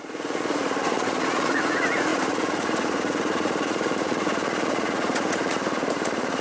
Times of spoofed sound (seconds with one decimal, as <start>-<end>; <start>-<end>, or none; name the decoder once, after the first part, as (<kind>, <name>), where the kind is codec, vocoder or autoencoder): 0.0-6.4 (vocoder, Vocos)